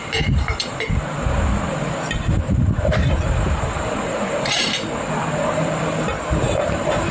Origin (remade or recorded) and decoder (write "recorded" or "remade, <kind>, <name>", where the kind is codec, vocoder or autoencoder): remade, vocoder, BigVGAN v2